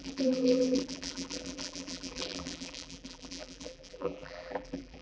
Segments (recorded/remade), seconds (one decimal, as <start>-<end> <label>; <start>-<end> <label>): 0.0-5.0 remade